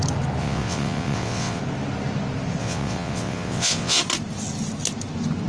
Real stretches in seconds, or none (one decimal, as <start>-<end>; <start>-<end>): 0.0-0.4; 1.6-2.6; 4.0-5.5